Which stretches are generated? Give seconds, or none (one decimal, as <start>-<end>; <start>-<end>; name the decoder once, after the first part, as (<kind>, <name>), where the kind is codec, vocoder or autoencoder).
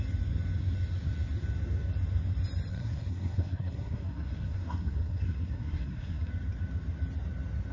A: 2.7-6.3 (codec, SNAC)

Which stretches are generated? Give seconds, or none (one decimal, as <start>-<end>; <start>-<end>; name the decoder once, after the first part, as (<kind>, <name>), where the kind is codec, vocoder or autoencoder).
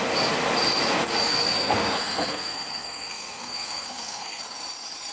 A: 1.3-4.4 (codec, SNAC)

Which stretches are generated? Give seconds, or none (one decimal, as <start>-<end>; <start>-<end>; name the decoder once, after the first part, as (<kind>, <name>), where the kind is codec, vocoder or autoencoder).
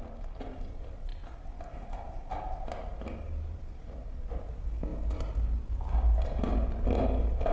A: none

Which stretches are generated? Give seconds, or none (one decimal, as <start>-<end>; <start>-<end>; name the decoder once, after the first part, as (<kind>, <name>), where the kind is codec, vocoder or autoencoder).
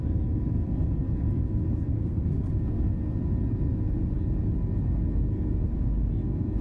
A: 1.9-2.5 (codec, SNAC)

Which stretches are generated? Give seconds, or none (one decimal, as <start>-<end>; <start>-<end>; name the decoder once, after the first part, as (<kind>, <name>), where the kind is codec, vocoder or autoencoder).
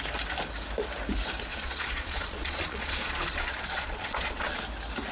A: 1.5-4.6 (vocoder, Vocos)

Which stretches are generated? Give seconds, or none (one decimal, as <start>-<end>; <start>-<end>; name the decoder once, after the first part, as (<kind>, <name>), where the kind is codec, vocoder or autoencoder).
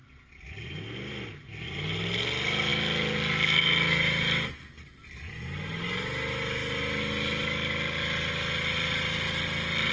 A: none